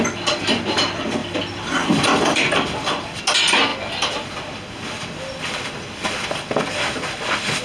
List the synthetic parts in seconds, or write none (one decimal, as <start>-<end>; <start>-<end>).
1.2-3.2

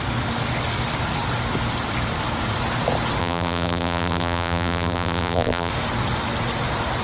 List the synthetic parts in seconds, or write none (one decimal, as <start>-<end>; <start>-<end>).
3.2-5.7

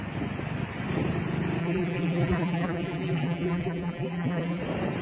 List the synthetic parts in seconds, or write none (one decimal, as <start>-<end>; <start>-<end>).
1.6-4.6

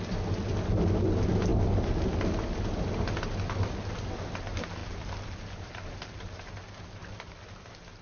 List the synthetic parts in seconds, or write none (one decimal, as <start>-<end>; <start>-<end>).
4.8-7.3

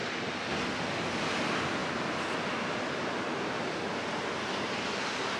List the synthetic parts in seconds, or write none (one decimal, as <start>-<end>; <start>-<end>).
none

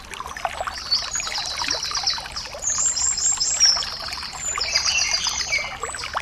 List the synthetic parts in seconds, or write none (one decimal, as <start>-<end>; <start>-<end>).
3.4-5.4

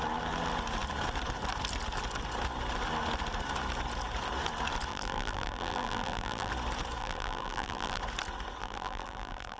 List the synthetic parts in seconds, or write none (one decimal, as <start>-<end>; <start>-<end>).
4.9-6.5; 7.0-8.0; 8.6-9.6

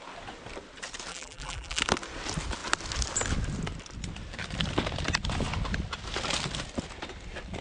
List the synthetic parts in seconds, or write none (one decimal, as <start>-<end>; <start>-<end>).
1.1-1.8